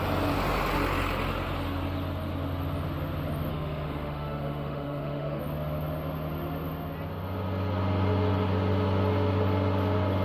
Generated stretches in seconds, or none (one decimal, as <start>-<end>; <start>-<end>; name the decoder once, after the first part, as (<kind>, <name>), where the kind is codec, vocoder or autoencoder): 3.5-5.4 (autoencoder, DAC-VAE)